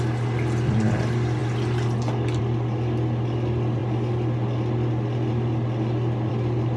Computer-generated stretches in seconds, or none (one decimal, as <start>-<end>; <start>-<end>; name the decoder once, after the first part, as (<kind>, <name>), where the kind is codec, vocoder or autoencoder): none